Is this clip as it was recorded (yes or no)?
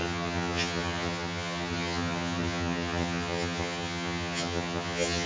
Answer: no